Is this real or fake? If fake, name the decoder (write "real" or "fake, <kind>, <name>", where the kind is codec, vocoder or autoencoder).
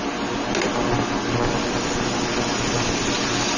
real